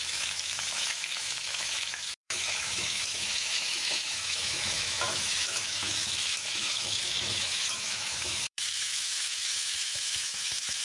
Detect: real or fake fake